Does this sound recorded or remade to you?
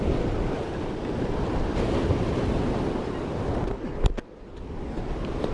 recorded